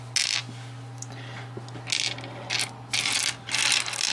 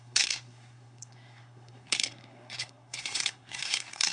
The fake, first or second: second